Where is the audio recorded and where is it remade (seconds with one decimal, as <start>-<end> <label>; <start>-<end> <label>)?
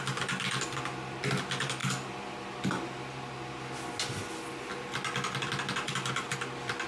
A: 0.0-6.9 recorded